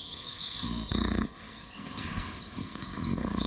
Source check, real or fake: fake